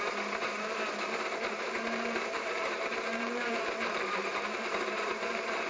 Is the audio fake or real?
fake